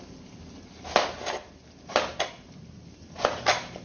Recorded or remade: recorded